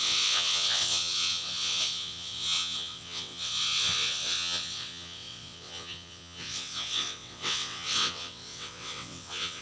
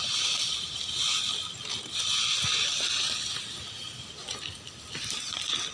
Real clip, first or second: second